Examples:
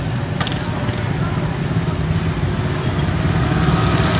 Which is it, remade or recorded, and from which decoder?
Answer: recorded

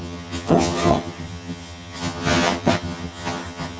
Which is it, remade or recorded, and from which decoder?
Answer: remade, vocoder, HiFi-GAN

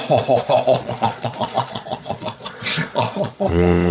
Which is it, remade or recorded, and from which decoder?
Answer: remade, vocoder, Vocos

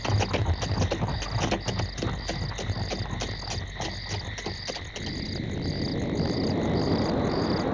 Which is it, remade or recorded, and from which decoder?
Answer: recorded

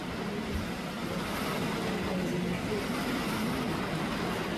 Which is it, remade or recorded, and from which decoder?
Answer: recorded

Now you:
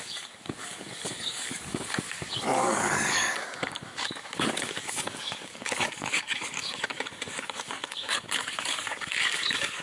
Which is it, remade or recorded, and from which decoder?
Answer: remade, codec, DAC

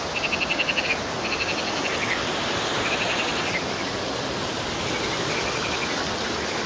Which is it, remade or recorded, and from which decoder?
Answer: recorded